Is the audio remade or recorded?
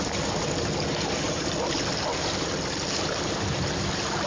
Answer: recorded